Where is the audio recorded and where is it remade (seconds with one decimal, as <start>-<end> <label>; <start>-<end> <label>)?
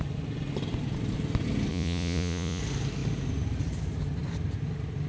0.0-1.7 recorded; 1.7-2.6 remade; 2.6-5.1 recorded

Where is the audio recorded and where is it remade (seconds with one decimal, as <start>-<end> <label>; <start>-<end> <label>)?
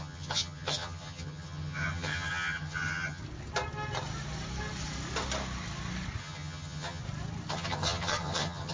0.0-3.2 remade; 3.2-6.2 recorded; 6.2-7.0 remade; 7.0-7.5 recorded; 7.5-8.7 remade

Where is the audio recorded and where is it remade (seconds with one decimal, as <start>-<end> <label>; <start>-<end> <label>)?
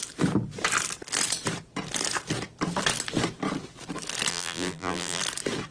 0.0-4.3 recorded; 4.3-5.2 remade; 5.2-5.7 recorded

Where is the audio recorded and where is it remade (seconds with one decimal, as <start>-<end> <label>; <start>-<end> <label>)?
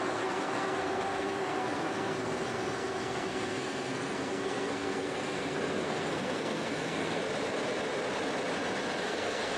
0.0-7.2 remade; 7.2-9.0 recorded; 9.0-9.6 remade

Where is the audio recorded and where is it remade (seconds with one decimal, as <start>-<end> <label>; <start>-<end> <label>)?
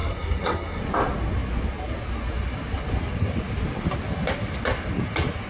0.0-0.8 remade; 0.8-5.5 recorded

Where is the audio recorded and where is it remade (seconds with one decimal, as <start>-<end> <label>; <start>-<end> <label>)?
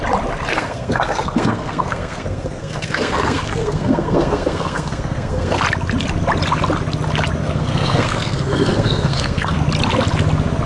0.0-0.5 recorded; 0.5-5.6 remade; 5.6-7.4 recorded; 7.4-9.6 remade; 9.6-10.7 recorded